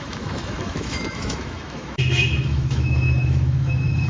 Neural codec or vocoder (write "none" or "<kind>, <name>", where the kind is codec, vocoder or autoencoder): autoencoder, DAC-VAE